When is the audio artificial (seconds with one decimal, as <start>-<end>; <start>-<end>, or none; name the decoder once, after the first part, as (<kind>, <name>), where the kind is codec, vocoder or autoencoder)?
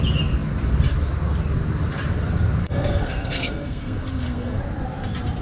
2.6-4.6 (codec, SNAC)